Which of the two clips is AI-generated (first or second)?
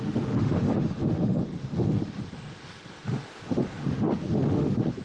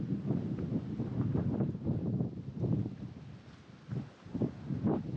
first